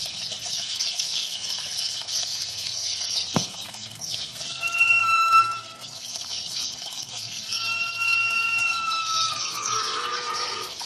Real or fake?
fake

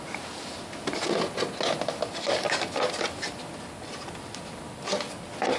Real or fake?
real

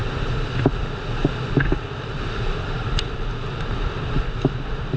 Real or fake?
real